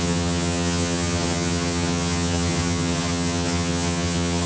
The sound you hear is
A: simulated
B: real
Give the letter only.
A